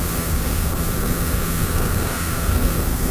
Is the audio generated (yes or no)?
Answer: yes